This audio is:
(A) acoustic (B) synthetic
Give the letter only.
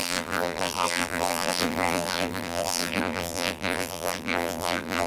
B